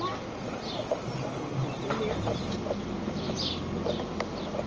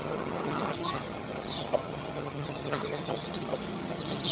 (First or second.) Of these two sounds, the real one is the first